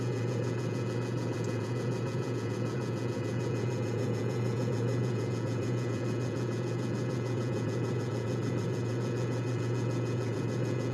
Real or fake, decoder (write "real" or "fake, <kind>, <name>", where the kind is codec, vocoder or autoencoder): fake, vocoder, Vocos